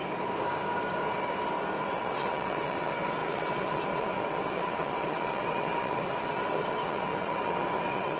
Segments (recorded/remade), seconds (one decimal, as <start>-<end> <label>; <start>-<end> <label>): 0.0-1.8 recorded; 1.8-8.2 remade